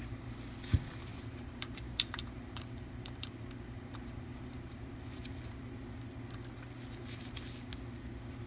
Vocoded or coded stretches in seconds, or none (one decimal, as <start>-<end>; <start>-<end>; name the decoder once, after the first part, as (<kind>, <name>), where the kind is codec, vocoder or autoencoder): 1.1-5.6 (vocoder, BigVGAN v2); 7.0-7.7